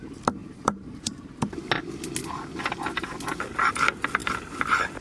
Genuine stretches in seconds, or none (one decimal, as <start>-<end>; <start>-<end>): 0.0-0.4; 1.5-5.0